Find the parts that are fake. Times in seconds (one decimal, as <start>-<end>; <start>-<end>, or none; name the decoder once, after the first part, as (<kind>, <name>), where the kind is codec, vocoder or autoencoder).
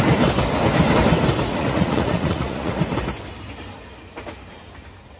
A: 1.5-2.8 (vocoder, Vocos)